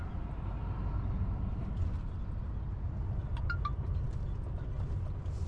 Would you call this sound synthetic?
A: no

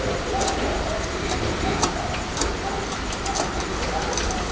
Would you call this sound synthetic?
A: no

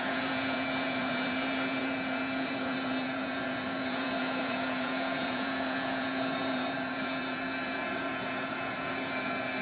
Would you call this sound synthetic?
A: yes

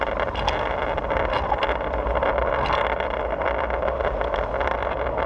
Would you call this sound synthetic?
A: no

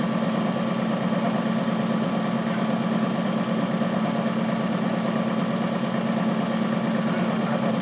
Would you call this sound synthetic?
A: no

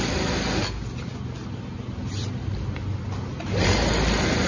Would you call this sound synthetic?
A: no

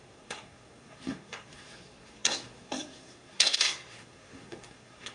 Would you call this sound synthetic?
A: yes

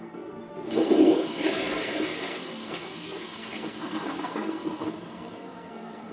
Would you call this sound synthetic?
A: yes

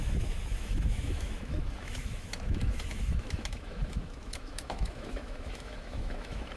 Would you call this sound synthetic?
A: yes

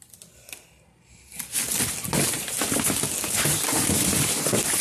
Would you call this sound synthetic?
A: no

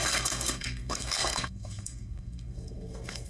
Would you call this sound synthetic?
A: yes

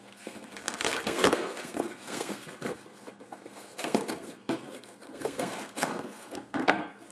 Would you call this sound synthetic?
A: yes